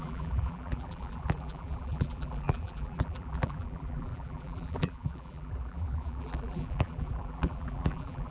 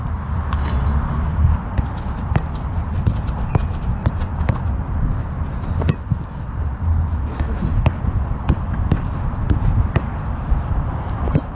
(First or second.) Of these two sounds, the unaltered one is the second